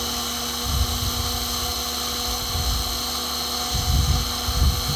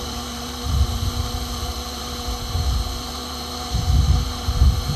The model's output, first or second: second